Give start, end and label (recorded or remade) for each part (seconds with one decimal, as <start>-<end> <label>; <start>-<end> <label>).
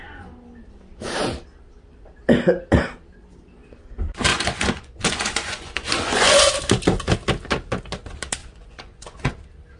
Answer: 0.0-4.3 recorded; 4.3-6.5 remade; 6.5-8.4 recorded; 8.4-9.3 remade; 9.3-9.8 recorded